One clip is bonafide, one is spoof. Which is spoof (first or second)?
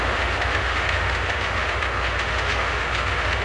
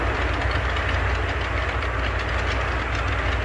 first